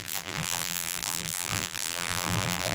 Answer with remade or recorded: remade